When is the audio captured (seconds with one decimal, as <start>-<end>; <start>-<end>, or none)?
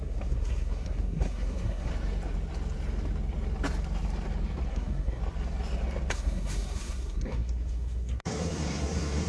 1.9-4.7; 5.2-6.1